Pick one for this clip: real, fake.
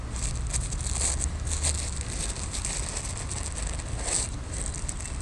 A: real